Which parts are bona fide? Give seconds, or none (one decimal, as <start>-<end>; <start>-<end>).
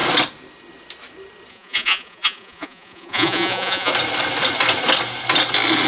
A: 0.0-1.5; 3.9-5.9